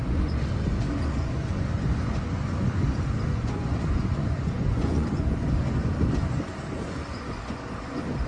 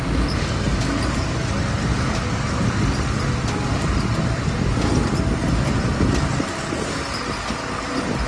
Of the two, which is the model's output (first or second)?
first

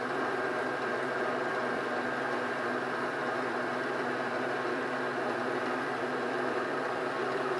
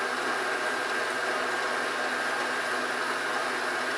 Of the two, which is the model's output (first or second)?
first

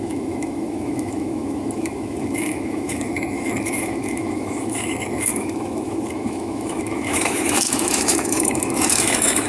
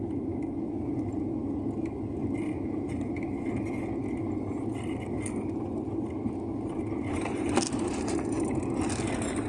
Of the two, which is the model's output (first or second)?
first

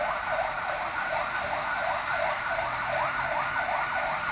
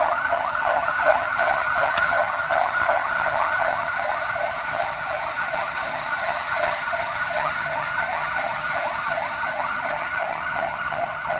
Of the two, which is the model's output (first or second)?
second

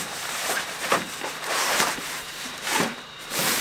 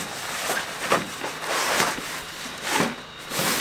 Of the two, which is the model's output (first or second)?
first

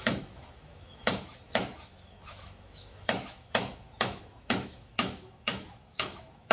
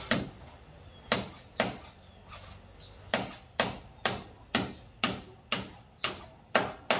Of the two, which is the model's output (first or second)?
first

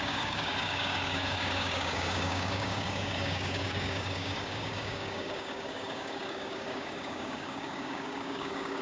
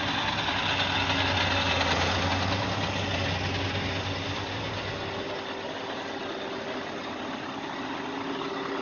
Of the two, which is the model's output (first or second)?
first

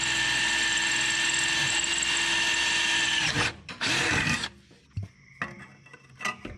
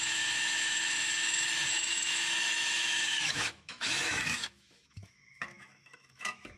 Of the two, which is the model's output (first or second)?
second